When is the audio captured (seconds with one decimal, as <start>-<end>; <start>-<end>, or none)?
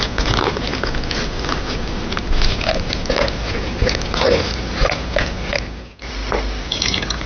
0.0-6.1; 6.6-7.3